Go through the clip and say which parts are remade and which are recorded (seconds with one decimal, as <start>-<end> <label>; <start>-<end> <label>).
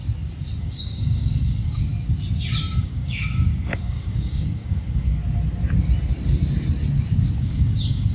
0.0-0.6 recorded; 0.6-1.9 remade; 1.9-2.6 recorded; 2.6-5.2 remade; 5.2-7.4 recorded; 7.4-8.1 remade